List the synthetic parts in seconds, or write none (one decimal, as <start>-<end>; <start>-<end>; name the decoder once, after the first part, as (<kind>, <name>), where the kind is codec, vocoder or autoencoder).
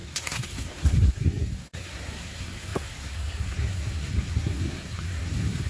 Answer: 0.0-5.7 (codec, SNAC)